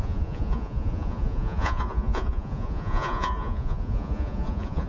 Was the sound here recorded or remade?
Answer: remade